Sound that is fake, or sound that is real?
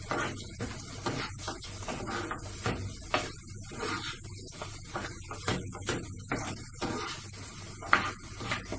real